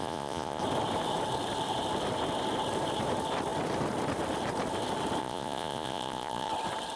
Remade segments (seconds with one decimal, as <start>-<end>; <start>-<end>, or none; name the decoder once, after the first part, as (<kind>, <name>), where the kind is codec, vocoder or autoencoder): 0.0-0.6 (vocoder, Vocos); 5.2-6.5